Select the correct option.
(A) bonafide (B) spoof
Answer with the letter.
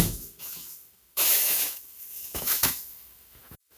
B